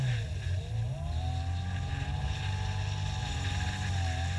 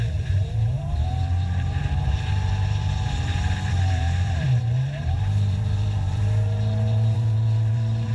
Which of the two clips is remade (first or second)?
second